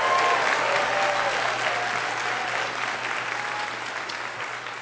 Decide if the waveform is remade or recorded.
recorded